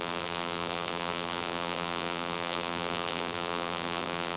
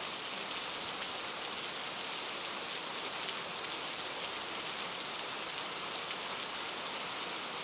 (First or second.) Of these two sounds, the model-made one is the first